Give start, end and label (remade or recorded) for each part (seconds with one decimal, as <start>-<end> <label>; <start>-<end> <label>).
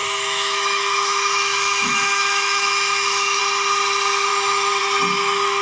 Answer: 0.0-3.4 remade; 3.4-4.3 recorded; 4.3-4.8 remade; 4.8-5.6 recorded